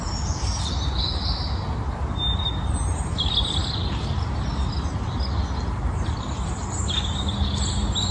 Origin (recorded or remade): recorded